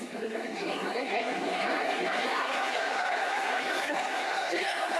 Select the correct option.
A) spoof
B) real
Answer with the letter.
A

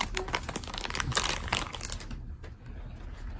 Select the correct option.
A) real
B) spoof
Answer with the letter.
A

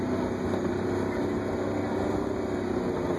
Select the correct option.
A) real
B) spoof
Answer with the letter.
A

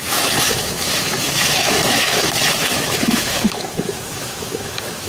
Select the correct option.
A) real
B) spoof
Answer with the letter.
B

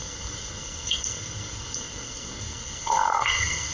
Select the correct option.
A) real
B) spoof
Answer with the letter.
B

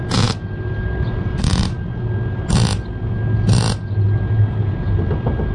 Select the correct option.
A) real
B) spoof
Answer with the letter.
A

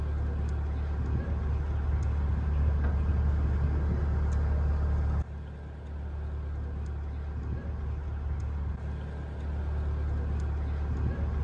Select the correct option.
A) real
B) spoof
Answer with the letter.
A